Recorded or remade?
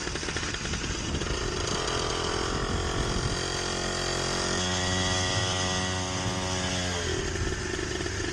recorded